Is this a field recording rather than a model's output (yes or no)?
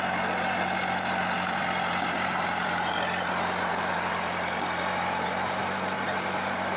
no